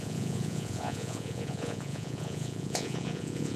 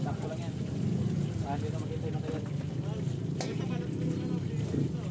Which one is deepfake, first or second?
first